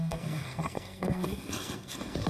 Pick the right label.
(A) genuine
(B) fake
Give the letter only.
B